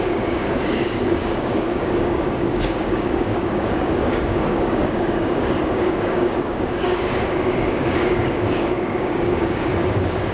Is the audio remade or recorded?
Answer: remade